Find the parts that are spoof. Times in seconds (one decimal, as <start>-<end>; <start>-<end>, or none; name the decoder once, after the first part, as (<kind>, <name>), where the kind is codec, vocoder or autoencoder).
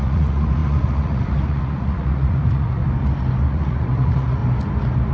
0.0-2.8 (vocoder, Vocos); 3.5-4.4